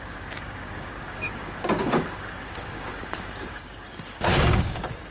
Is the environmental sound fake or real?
fake